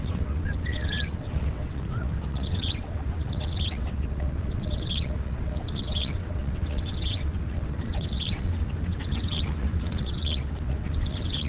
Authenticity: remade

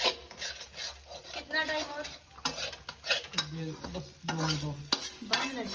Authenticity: recorded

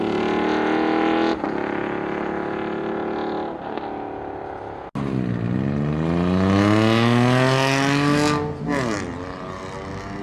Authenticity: recorded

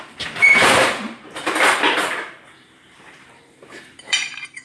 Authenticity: remade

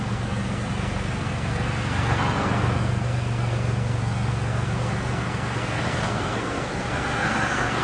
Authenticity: remade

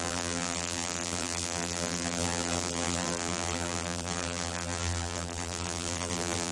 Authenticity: remade